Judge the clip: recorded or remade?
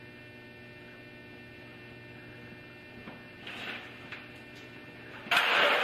recorded